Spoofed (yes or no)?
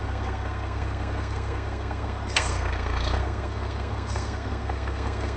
yes